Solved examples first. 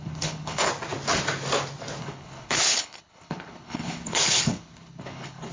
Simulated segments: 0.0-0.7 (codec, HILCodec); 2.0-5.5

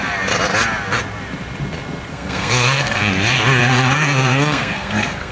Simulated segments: 2.1-3.0 (codec, SNAC); 3.6-5.3

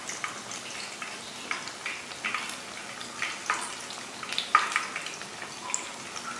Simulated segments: none

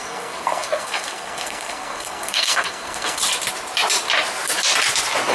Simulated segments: 0.0-3.2 (codec, SNAC)

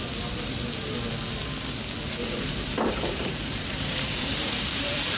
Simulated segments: 2.2-5.2 (vocoder, BigVGAN v2)

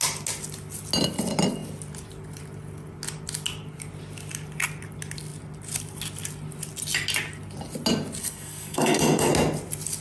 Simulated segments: 8.2-9.3 (codec, SNAC)